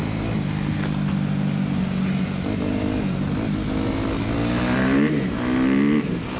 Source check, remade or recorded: recorded